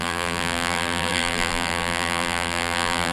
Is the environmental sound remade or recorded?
remade